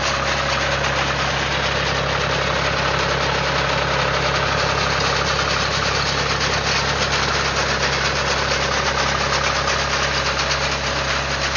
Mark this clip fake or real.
real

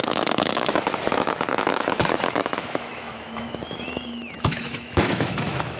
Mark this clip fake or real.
fake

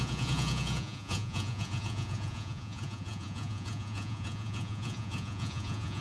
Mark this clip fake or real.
fake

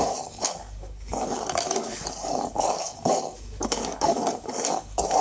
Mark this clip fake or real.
fake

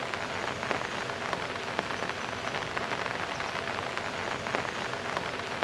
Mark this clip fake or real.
real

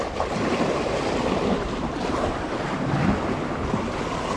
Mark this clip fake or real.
real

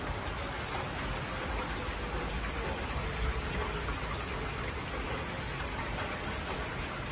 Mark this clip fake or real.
real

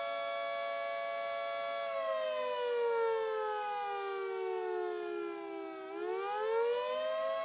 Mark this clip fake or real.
real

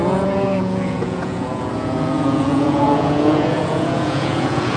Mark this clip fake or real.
fake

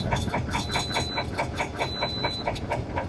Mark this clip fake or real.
real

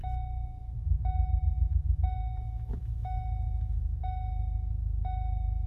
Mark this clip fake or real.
fake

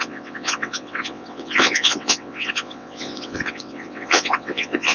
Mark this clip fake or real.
fake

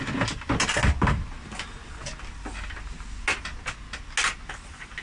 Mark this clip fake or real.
real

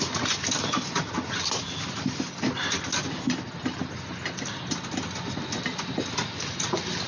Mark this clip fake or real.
real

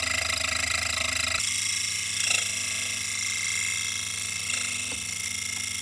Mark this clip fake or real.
real